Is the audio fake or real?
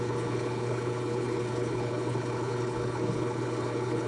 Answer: fake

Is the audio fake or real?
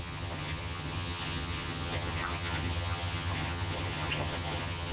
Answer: fake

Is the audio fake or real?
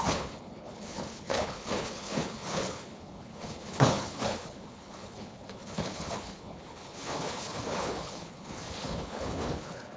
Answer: fake